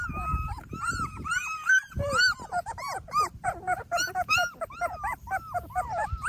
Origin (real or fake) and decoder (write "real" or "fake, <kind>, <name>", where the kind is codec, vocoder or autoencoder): fake, vocoder, BigVGAN v2